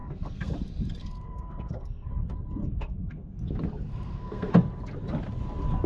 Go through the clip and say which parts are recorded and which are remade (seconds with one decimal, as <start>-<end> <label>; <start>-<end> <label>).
0.0-0.5 remade; 0.5-1.0 recorded; 1.0-2.1 remade; 2.1-2.6 recorded; 2.6-3.4 remade; 3.4-3.9 recorded; 3.9-4.5 remade; 4.5-5.9 recorded